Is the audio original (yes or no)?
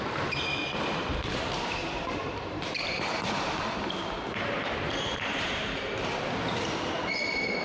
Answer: no